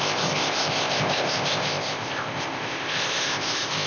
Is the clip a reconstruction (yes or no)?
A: yes